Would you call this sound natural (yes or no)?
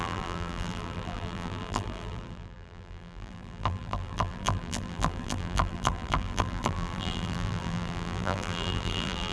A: no